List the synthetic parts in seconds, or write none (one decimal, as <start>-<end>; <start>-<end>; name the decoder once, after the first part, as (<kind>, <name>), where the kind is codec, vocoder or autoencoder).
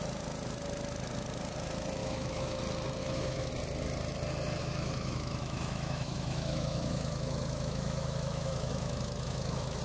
2.0-2.6 (autoencoder, DAC-VAE); 3.0-3.5; 4.6-9.8